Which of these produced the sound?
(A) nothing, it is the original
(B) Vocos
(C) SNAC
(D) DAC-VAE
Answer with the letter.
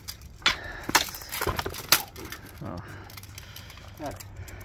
A